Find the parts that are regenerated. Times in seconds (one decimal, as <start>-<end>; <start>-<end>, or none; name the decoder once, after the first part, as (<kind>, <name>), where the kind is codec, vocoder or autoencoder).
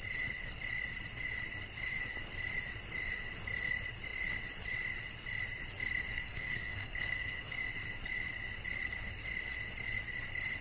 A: 6.1-7.7 (codec, SNAC)